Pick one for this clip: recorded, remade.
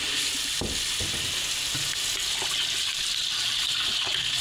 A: recorded